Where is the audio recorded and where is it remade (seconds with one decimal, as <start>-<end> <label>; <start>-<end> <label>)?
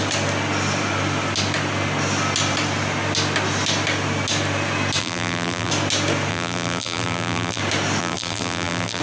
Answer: 0.0-5.0 recorded; 5.0-5.7 remade; 5.7-6.3 recorded; 6.3-7.6 remade; 7.6-8.0 recorded; 8.0-9.0 remade